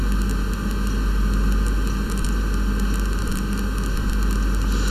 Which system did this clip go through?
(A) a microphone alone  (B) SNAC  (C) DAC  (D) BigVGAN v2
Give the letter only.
D